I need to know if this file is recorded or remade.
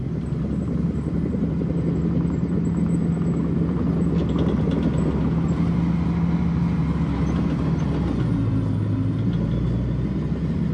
recorded